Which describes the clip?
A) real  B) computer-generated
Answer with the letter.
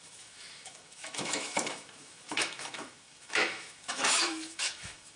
B